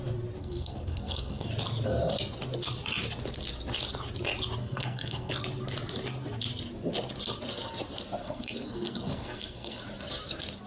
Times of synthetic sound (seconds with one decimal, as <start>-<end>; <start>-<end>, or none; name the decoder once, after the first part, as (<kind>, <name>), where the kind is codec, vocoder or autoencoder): 0.4-1.5 (codec, SNAC); 4.6-5.3; 8.2-9.8